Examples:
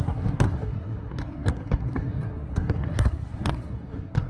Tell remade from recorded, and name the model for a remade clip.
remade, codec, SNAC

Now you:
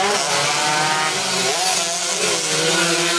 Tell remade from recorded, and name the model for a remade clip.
recorded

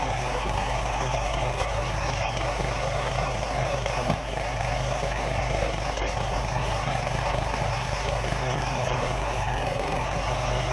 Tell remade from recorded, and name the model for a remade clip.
remade, codec, SNAC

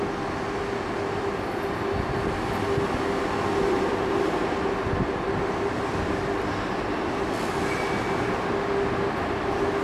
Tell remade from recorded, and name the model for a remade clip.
recorded